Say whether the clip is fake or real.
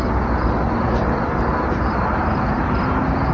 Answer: real